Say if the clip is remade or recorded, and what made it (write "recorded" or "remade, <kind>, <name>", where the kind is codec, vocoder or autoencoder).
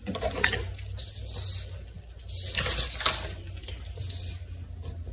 recorded